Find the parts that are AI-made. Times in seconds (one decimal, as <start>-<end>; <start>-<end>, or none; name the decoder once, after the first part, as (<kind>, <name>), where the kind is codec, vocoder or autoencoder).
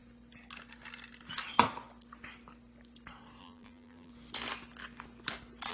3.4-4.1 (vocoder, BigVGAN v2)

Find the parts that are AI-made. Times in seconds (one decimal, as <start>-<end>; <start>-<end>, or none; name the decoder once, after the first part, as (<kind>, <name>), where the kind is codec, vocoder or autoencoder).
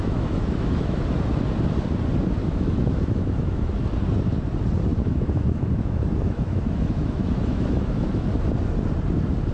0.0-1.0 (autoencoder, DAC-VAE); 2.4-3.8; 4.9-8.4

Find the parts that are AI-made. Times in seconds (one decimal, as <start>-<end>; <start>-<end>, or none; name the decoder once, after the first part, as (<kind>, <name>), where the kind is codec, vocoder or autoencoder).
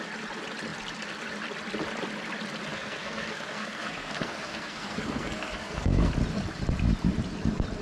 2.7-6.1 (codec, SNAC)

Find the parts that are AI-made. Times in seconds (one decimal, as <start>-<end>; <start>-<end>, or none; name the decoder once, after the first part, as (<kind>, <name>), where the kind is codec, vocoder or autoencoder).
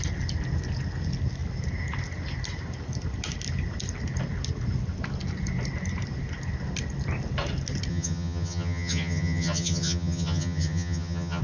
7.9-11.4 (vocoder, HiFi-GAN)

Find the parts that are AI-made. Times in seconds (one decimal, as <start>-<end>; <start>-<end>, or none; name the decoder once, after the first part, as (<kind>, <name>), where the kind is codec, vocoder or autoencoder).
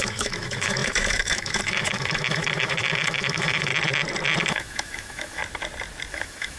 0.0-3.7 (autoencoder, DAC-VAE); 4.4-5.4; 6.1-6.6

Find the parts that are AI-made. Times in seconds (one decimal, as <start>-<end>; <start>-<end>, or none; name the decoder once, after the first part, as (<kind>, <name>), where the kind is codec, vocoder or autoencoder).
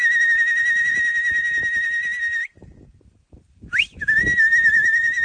0.0-4.2 (vocoder, BigVGAN v2); 4.7-5.2